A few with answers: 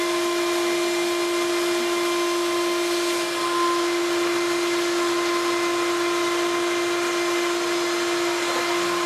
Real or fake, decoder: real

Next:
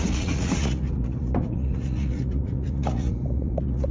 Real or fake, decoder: fake, vocoder, Vocos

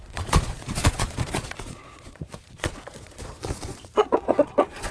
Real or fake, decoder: fake, vocoder, Vocos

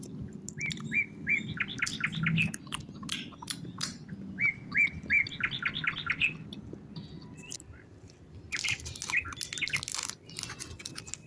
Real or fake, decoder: real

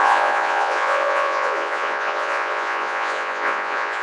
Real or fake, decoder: fake, vocoder, Vocos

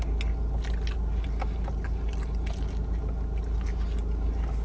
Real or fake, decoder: real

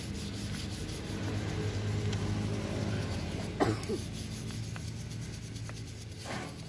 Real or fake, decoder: real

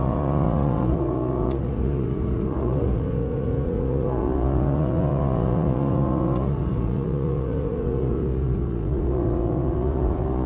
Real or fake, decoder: fake, vocoder, Vocos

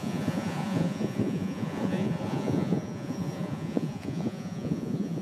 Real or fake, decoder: fake, vocoder, Vocos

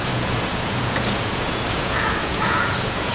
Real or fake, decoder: fake, vocoder, Vocos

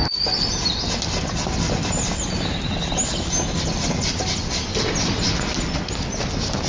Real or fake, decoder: real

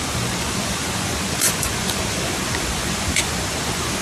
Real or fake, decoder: fake, vocoder, Vocos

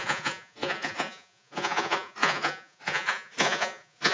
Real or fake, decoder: fake, vocoder, Vocos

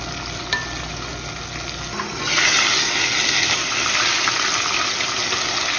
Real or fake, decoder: real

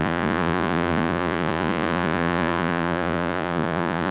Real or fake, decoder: fake, vocoder, Vocos